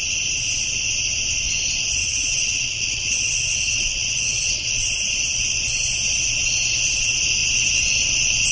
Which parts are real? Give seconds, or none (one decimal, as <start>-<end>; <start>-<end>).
0.0-2.0; 4.7-8.5